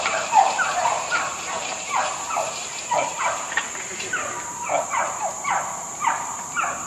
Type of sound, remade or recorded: remade